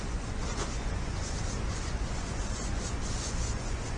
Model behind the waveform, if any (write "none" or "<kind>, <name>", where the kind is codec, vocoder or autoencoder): vocoder, Vocos